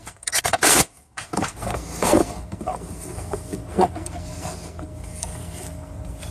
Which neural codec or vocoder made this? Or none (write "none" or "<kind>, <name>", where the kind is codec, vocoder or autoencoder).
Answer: codec, SNAC